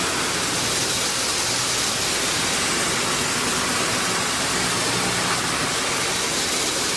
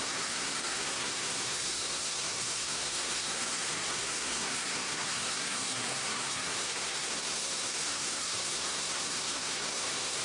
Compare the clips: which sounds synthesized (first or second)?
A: second